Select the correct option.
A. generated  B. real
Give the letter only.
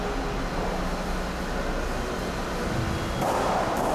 B